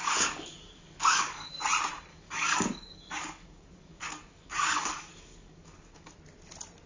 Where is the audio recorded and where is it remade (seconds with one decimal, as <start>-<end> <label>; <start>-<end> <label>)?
0.0-1.5 remade; 1.5-2.1 recorded; 2.1-6.1 remade; 6.1-6.9 recorded